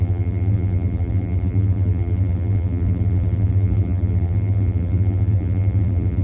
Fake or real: fake